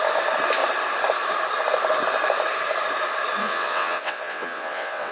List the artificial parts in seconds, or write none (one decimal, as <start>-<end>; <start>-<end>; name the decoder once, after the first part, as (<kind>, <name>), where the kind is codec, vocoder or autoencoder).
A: 3.4-5.1 (vocoder, WaveNeXt)